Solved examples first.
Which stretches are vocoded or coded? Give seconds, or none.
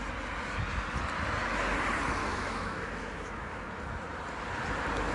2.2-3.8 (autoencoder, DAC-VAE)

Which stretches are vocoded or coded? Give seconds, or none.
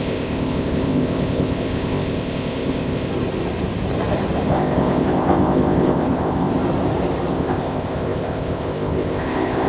0.0-3.1 (codec, ZipCodec); 4.5-6.5; 7.3-9.7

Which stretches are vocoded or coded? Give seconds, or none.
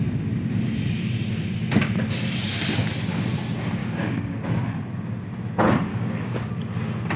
3.8-4.5 (codec, DAC); 5.9-6.5